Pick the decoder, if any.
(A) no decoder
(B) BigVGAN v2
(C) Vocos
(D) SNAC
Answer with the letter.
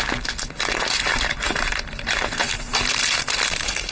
A